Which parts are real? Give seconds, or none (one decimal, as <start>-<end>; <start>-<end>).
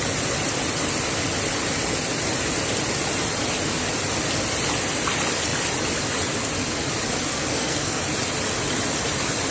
0.0-7.3; 8.0-9.5